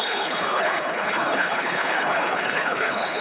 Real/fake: fake